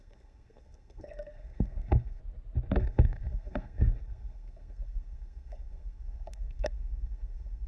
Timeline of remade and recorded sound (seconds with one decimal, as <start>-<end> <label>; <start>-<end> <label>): 0.0-2.2 remade; 2.2-2.8 recorded; 2.8-7.7 remade